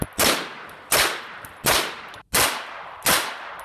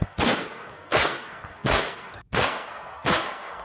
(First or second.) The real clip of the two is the first